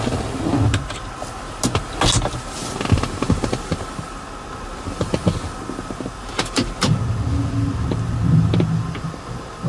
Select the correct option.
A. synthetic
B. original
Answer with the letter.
B